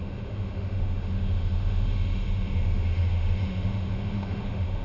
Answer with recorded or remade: remade